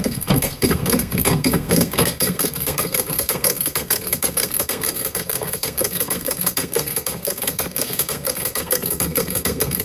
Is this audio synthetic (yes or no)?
yes